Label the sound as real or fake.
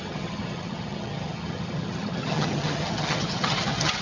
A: fake